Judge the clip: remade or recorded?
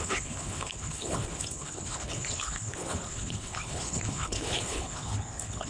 remade